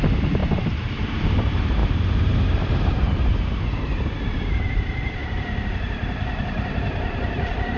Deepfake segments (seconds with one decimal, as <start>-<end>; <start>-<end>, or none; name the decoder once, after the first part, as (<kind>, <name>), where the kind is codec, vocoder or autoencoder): 0.0-7.8 (vocoder, BigVGAN v2)